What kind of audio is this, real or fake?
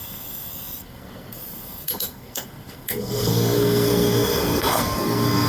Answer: fake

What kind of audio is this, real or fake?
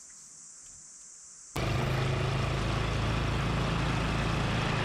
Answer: real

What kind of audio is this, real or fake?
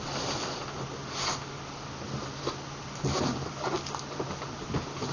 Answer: real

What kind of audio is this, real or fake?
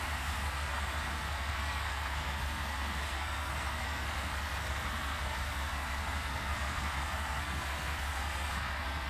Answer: fake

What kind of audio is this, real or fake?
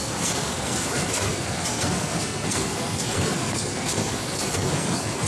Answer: fake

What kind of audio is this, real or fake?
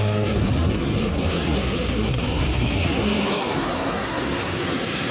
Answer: fake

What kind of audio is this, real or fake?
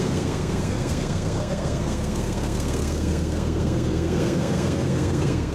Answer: fake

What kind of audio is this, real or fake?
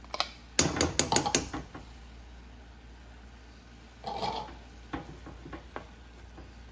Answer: real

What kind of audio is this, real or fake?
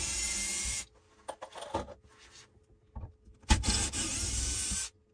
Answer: real